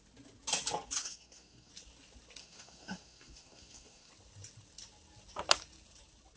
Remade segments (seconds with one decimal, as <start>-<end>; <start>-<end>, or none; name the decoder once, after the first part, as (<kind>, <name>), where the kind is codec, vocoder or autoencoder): 1.0-1.7 (codec, SNAC); 2.4-4.1